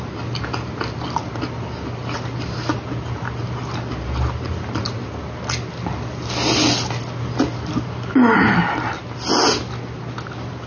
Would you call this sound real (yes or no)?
yes